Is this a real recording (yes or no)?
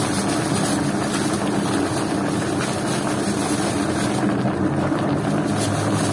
yes